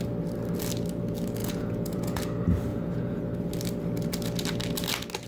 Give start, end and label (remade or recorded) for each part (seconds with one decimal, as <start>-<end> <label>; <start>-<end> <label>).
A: 0.0-1.4 recorded; 1.4-2.2 remade; 2.2-2.7 recorded; 2.7-3.2 remade; 3.2-5.3 recorded